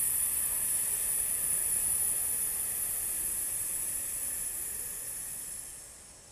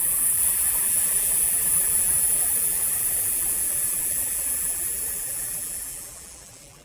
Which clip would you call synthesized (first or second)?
second